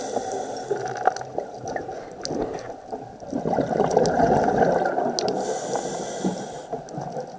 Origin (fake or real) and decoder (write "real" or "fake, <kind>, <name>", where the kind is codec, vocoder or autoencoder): real